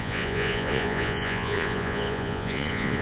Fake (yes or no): yes